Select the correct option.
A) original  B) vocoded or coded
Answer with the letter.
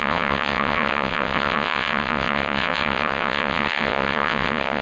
B